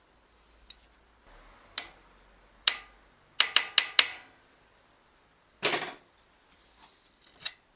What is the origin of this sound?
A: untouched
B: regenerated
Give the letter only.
A